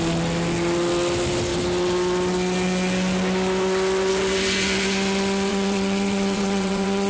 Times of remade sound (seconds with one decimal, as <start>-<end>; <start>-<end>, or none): 5.5-7.1